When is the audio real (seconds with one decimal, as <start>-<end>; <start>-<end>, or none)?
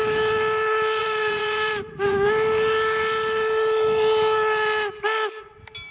0.0-1.0; 2.3-5.9